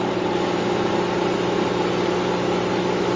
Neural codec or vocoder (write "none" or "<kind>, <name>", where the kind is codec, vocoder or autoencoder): none